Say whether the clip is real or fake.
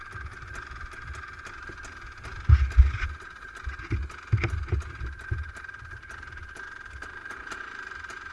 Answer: real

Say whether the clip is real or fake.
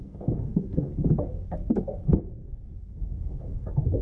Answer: fake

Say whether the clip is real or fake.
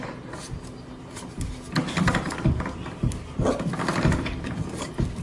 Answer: fake